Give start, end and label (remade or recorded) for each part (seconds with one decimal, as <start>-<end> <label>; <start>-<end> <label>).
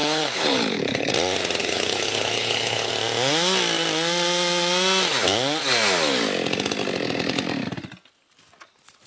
0.0-1.1 remade; 1.1-1.6 recorded; 1.6-2.9 remade; 2.9-9.1 recorded